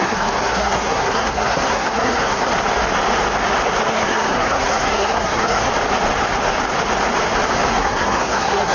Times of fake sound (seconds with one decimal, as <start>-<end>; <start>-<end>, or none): 0.0-2.5; 3.9-5.7; 7.7-8.7